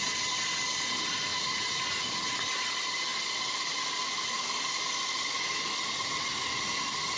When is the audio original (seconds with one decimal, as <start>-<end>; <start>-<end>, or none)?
0.0-1.3; 2.4-7.2